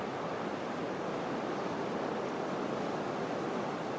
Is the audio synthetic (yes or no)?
no